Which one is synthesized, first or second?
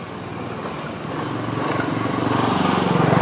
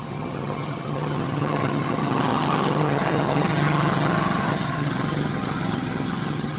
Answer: second